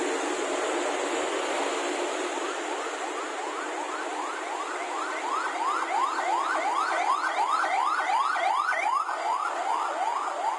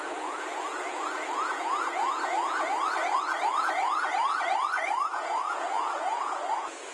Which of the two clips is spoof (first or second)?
second